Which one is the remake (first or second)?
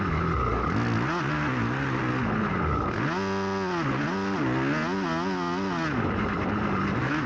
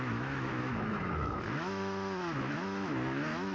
second